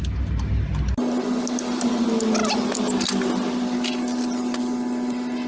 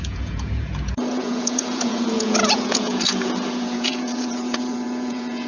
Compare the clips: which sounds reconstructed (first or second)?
second